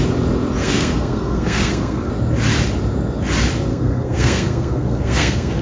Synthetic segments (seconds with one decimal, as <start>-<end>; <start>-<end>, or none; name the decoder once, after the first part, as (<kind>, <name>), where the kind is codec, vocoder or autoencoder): 0.6-2.1 (codec, SNAC); 3.7-5.6